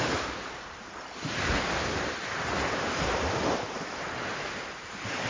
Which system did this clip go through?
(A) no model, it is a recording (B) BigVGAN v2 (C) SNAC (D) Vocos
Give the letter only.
B